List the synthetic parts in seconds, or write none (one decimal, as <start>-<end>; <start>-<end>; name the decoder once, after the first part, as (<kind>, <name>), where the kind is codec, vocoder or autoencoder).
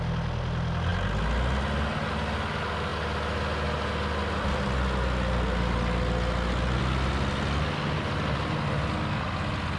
none